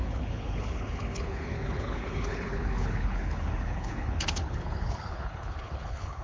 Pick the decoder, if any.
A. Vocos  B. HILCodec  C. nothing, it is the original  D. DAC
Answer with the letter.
B